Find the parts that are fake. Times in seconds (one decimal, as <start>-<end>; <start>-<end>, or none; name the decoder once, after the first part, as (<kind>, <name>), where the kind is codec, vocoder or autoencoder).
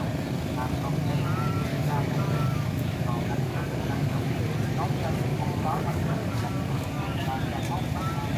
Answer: 1.7-4.4 (codec, DAC); 5.3-7.4